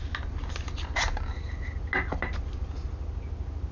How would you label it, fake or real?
real